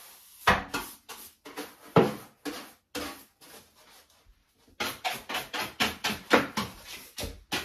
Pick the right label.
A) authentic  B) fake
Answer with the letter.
A